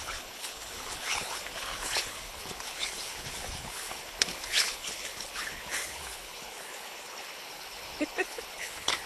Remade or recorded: remade